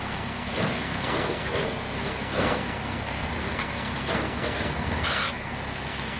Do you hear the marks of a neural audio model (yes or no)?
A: yes